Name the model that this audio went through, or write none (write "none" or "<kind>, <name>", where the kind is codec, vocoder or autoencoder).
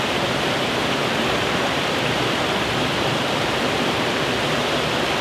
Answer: none